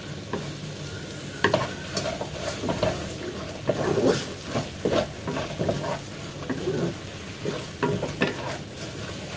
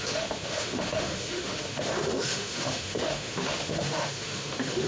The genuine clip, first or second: first